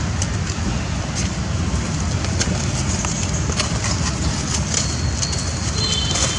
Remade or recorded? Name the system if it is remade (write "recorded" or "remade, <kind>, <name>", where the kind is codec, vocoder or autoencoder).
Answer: recorded